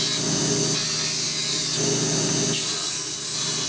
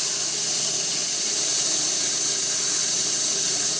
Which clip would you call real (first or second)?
first